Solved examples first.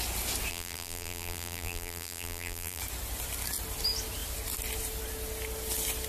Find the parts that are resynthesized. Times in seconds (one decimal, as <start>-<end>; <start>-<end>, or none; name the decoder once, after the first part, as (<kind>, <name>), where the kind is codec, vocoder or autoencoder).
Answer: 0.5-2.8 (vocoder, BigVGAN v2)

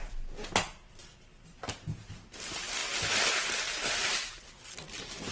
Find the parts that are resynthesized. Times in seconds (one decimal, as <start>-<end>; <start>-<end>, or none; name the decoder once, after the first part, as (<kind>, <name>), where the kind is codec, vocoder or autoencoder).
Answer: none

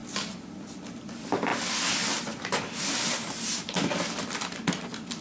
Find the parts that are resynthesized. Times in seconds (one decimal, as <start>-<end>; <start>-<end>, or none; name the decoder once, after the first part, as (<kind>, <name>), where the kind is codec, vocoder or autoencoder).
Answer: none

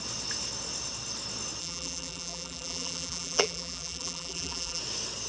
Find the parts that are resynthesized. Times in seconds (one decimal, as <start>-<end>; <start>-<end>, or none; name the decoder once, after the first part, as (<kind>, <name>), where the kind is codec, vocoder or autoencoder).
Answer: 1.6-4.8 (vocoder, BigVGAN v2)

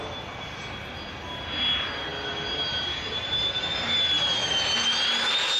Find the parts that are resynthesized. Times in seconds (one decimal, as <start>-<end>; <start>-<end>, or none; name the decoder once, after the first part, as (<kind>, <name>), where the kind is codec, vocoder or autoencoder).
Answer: none